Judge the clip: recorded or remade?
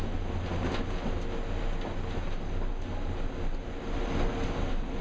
recorded